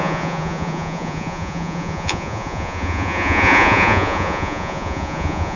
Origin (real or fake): fake